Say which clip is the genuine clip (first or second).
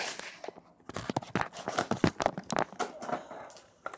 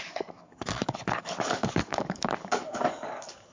first